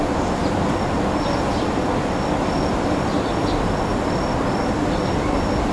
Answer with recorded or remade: recorded